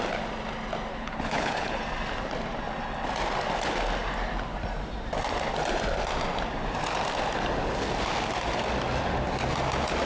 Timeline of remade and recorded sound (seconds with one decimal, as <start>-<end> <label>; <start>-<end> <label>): 0.0-0.9 recorded; 0.9-1.8 remade; 1.8-10.1 recorded

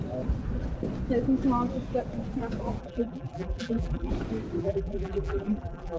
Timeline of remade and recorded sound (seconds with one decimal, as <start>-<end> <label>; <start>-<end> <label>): 0.0-2.8 recorded; 2.8-4.1 remade; 4.1-4.6 recorded; 4.6-6.0 remade

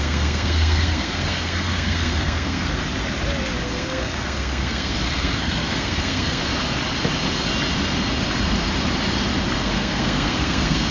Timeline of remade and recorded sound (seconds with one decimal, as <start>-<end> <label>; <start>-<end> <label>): 0.0-2.8 remade; 2.8-3.6 recorded; 3.6-6.4 remade; 6.4-9.6 recorded; 9.6-10.9 remade